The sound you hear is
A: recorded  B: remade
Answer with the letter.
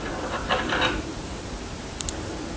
A